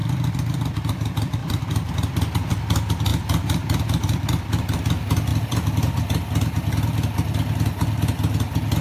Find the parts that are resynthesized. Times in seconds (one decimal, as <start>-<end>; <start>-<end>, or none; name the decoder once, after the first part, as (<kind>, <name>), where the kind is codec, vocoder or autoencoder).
0.0-0.6 (vocoder, BigVGAN v2); 1.4-2.5; 3.1-4.8; 5.3-6.0